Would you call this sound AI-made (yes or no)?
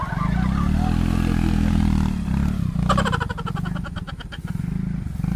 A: no